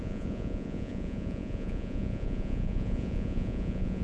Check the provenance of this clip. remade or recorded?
remade